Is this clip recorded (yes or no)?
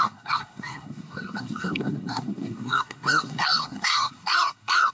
no